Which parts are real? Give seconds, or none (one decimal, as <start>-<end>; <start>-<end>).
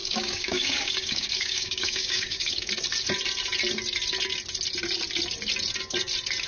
2.7-6.5